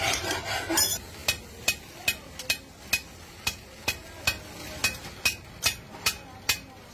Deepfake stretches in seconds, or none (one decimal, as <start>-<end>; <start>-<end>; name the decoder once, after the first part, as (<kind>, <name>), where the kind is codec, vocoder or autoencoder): none